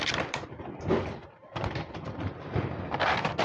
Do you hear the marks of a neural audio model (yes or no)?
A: yes